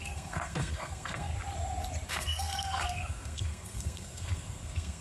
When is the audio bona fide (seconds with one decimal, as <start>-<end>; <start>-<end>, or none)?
1.3-2.1